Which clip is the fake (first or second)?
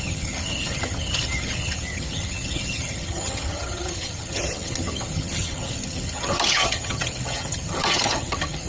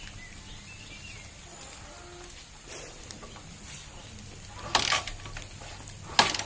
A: first